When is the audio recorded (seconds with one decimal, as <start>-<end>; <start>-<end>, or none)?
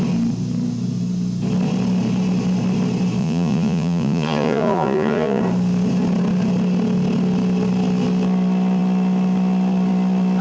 0.0-3.2; 5.4-10.4